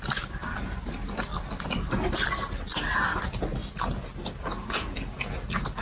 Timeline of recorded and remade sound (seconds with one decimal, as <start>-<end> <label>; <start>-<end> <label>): 0.0-0.4 recorded; 0.4-2.3 remade; 2.3-5.8 recorded